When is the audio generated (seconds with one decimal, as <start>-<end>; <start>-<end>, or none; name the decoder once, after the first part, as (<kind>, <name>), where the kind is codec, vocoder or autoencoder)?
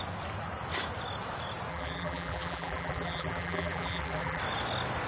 1.7-4.4 (vocoder, BigVGAN v2)